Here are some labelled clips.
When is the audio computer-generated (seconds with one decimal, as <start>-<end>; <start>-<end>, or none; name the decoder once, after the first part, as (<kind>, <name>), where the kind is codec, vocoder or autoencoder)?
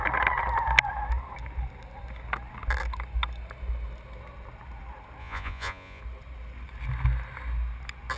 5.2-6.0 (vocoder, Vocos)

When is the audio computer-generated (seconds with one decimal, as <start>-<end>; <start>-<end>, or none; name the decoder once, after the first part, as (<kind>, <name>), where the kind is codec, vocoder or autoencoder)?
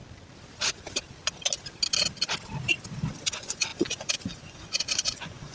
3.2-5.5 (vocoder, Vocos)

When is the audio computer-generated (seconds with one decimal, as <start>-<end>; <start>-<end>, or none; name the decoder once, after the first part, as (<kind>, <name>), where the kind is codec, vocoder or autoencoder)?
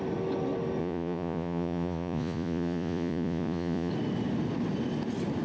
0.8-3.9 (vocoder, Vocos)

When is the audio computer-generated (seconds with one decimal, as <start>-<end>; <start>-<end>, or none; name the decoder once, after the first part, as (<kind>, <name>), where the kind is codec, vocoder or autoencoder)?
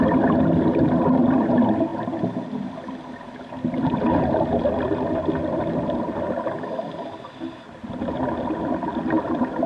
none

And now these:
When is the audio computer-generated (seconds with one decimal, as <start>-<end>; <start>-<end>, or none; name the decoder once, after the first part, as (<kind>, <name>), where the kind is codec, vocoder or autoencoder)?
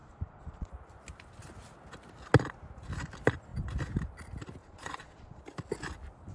0.0-0.7 (vocoder, Vocos); 4.6-5.4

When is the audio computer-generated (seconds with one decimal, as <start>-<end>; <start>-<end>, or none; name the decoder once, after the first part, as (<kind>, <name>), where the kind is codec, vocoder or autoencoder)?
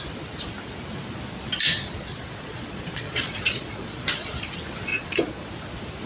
2.1-4.3 (vocoder, Vocos); 4.9-5.5